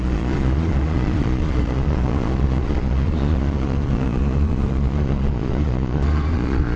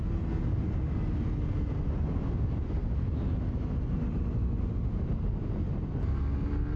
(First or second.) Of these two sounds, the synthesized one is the first